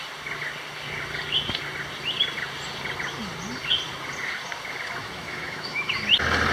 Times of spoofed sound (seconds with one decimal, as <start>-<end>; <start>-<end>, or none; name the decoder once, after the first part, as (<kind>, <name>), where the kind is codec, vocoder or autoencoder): 5.0-5.9 (autoencoder, DAC-VAE)